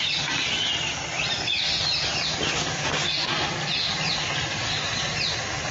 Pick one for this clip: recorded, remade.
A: recorded